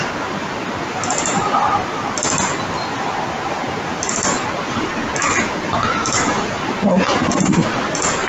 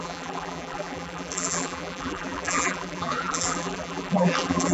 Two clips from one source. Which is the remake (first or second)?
second